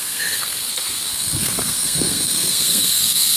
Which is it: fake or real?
fake